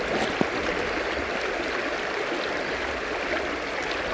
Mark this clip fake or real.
real